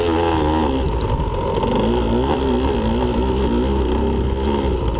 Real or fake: real